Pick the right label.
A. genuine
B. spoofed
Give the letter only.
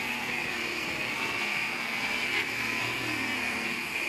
B